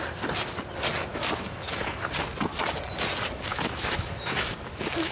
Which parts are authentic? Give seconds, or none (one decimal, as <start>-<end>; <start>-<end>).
0.0-1.1; 2.0-3.5